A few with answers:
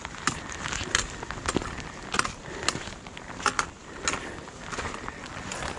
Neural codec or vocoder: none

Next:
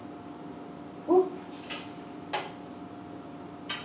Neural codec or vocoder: none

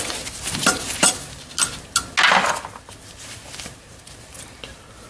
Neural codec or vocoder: none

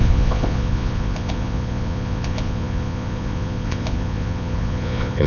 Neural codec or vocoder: vocoder, Vocos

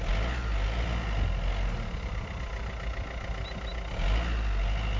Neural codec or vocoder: none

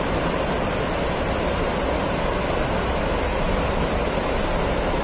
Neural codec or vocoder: none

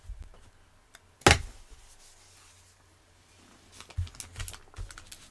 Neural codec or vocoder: none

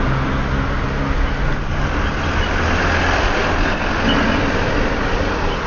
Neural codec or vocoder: none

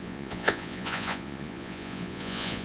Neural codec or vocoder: vocoder, Vocos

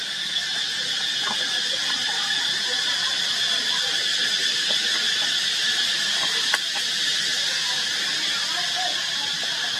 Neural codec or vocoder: none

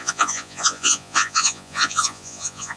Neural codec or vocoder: vocoder, Vocos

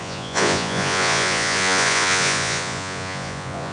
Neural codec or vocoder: vocoder, Vocos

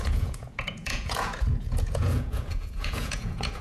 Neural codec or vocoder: vocoder, Vocos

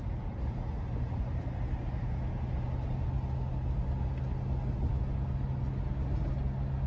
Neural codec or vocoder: none